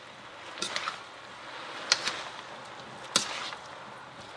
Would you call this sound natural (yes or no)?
yes